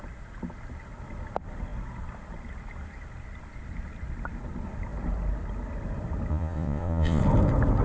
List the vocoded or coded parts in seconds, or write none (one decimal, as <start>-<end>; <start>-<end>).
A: 6.3-7.2